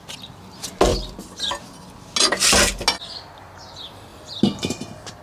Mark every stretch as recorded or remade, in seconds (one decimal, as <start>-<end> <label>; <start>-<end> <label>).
0.0-0.9 recorded; 0.9-1.6 remade; 1.6-4.1 recorded; 4.1-4.7 remade; 4.7-5.2 recorded